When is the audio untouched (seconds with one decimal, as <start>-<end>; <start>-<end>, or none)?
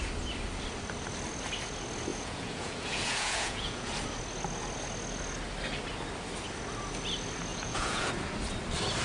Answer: 0.0-2.1; 3.9-7.5; 8.1-9.0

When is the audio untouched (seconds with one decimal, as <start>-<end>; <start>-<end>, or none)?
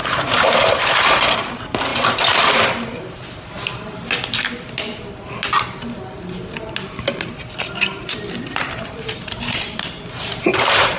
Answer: 0.0-7.9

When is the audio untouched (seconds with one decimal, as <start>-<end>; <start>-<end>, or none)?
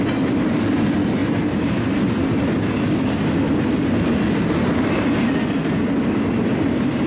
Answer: 0.0-7.1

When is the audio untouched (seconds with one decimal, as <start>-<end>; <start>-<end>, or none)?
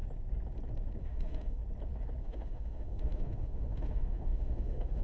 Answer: 0.0-1.0; 1.6-2.2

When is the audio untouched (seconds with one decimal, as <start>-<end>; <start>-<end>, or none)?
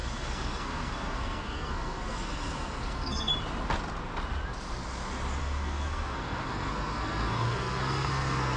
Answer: 3.3-5.4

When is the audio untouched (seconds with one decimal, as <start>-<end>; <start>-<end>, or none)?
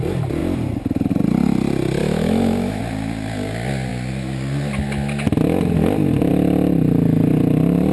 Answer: 0.0-2.0; 2.8-7.9